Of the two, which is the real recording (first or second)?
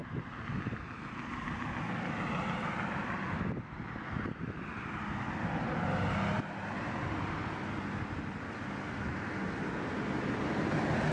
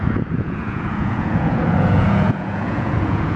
first